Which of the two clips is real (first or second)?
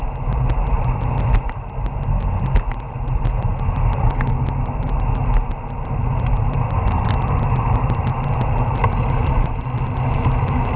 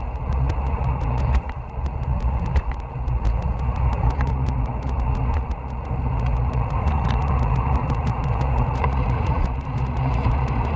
first